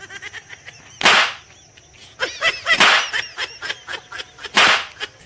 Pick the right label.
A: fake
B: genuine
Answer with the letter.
B